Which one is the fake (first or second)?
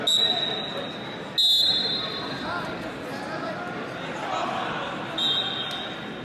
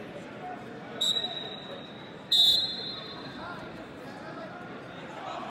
second